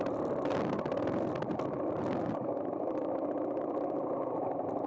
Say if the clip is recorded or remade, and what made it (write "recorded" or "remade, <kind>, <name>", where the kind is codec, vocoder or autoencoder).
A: recorded